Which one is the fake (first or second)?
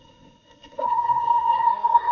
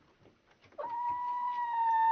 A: first